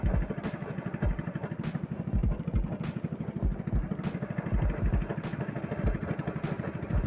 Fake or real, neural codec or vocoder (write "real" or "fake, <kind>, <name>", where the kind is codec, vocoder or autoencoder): real